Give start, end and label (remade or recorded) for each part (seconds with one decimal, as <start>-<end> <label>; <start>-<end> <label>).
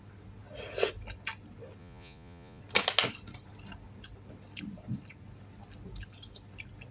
0.0-1.8 recorded; 1.8-2.6 remade; 2.6-6.9 recorded